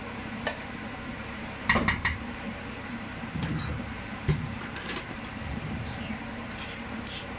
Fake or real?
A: fake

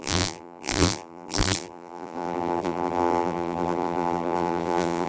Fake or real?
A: fake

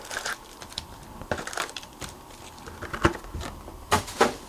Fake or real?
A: fake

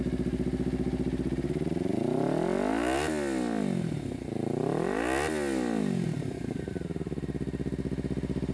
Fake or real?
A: real